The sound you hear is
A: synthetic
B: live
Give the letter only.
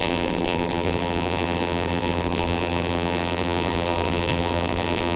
A